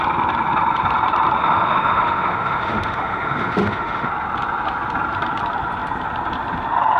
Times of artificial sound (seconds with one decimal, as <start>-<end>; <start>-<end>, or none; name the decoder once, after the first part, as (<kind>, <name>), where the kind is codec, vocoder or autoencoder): 1.4-4.1 (autoencoder, DAC-VAE)